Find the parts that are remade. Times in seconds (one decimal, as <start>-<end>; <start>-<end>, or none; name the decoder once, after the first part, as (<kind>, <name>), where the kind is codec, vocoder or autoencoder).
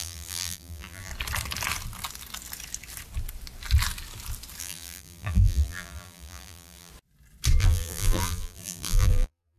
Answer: 0.0-1.1 (vocoder, BigVGAN v2); 4.6-6.9; 7.6-9.6